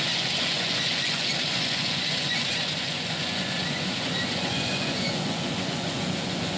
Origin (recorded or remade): remade